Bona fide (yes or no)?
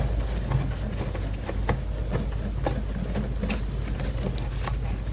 yes